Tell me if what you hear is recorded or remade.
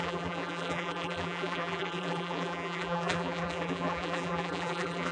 remade